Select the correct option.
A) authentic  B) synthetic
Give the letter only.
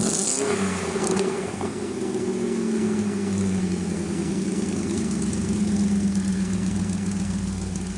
B